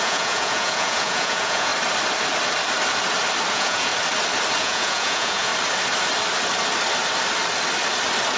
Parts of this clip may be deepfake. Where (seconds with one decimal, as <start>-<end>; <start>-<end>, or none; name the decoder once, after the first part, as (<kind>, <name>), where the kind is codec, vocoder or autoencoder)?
0.0-1.7 (vocoder, Vocos); 3.5-3.9; 4.6-5.5